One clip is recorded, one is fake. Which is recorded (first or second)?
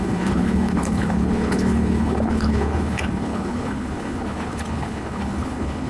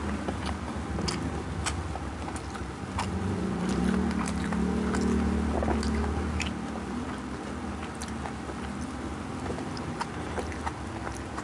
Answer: second